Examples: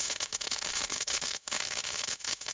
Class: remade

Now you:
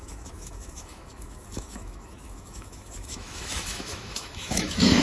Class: remade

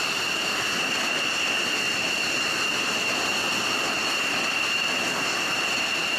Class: recorded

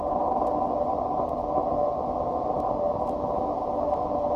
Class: recorded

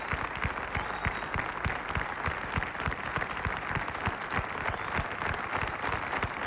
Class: recorded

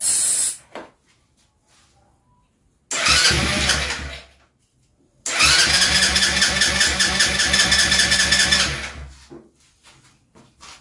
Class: recorded